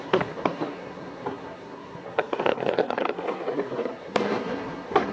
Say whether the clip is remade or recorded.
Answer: remade